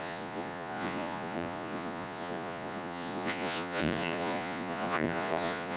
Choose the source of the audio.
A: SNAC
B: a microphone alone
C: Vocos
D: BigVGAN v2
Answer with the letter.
C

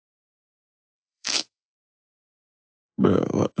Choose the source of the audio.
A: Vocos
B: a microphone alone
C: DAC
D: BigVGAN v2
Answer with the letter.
C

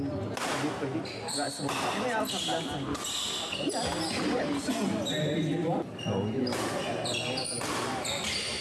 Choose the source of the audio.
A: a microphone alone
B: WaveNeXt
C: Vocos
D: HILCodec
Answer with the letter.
A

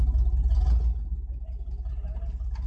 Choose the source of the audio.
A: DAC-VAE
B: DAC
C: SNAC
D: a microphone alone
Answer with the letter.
D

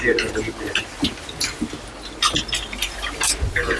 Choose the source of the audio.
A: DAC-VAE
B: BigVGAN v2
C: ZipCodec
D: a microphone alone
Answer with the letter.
D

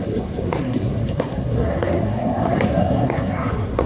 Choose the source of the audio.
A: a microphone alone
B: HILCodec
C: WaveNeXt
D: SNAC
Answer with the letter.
D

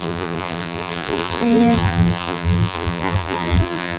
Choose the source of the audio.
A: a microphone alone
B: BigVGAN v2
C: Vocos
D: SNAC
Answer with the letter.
B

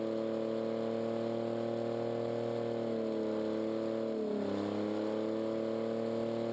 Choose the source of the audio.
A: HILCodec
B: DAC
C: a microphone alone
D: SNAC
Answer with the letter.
C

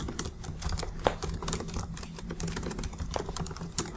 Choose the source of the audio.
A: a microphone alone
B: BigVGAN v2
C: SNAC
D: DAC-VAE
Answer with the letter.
B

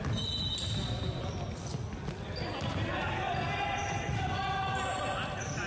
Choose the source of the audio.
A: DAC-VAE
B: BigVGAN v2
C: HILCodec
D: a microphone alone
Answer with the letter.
D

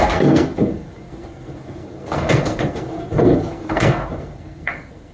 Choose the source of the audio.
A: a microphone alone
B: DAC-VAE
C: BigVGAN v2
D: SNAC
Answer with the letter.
D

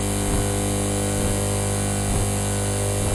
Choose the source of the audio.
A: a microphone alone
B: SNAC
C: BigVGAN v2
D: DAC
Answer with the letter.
A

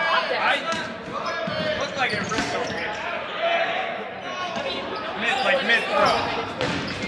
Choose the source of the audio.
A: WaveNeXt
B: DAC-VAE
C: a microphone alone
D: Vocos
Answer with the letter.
C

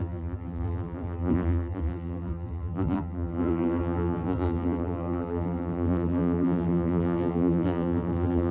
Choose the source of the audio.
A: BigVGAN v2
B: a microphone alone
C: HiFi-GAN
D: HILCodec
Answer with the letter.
A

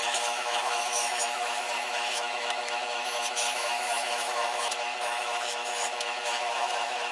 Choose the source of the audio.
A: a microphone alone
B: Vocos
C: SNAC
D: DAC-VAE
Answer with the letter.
D